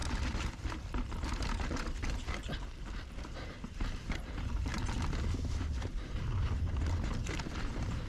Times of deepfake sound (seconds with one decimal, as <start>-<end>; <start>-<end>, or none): 0.0-4.7; 5.5-8.1